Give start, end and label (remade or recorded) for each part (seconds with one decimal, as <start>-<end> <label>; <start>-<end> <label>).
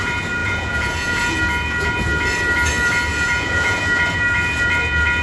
0.0-0.4 recorded; 0.4-1.4 remade; 1.4-3.1 recorded; 3.1-3.8 remade; 3.8-5.2 recorded